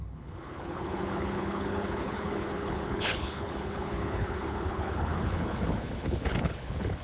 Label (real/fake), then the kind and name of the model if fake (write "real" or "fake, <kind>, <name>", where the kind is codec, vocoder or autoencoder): fake, codec, HILCodec